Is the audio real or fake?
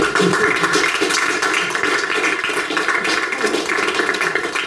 real